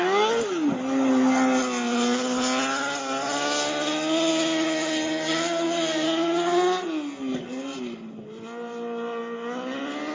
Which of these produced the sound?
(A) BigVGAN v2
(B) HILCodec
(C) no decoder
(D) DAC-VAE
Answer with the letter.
C